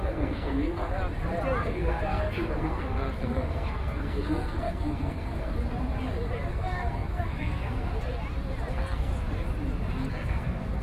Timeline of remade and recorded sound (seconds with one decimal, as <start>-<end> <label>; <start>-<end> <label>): 0.0-1.0 remade; 1.0-1.6 recorded; 1.6-5.5 remade; 5.5-6.5 recorded; 6.5-7.9 remade; 7.9-8.7 recorded; 8.7-9.1 remade; 9.1-10.1 recorded; 10.1-10.8 remade